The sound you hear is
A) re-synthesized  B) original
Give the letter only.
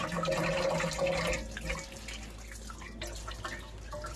B